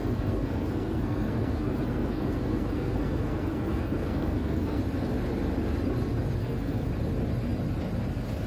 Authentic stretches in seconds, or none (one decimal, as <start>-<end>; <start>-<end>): 4.8-6.4; 6.9-8.5

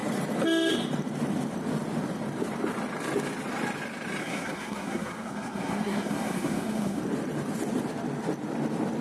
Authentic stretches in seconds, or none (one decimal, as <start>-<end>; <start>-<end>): 0.0-4.2; 7.0-9.0

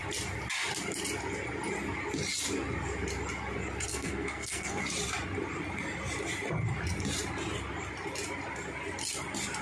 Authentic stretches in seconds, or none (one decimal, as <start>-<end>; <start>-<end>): 0.0-3.9; 4.8-9.6

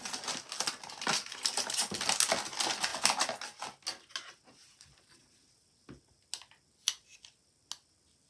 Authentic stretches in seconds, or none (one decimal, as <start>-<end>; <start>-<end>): 0.0-8.3

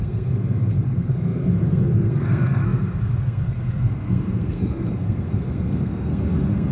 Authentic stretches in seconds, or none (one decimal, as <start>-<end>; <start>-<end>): none

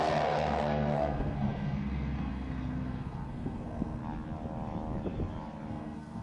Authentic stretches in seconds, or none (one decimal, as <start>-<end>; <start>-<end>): 4.0-5.7

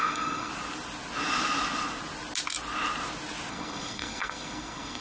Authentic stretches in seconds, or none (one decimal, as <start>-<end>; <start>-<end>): 0.5-3.5